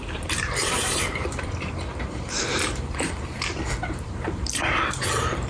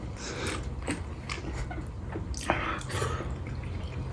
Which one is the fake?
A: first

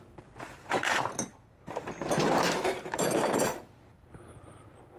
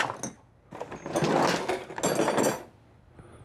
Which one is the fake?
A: first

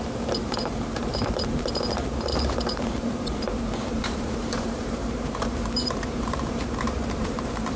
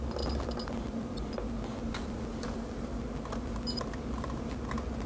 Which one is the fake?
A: first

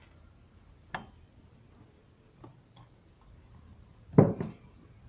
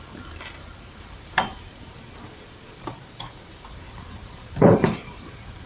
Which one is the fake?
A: second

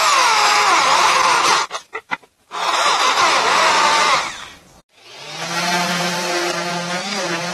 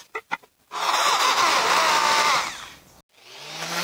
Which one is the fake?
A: first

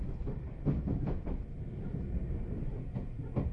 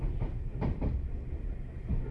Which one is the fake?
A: second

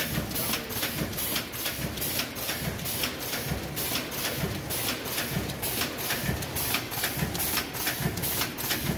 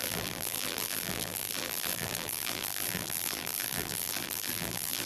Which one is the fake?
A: second